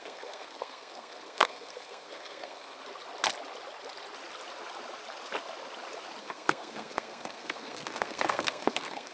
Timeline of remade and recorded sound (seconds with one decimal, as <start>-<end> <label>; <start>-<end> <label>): 0.0-2.8 remade; 2.8-6.2 recorded; 6.2-9.1 remade